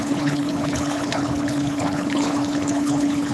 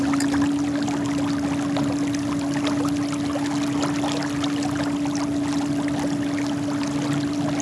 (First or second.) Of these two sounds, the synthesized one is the first